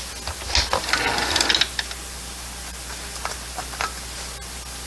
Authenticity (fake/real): real